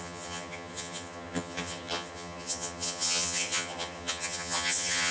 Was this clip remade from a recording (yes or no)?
yes